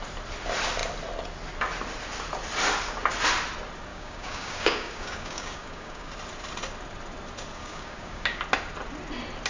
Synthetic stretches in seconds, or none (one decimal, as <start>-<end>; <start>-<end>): 3.9-6.1; 7.6-8.4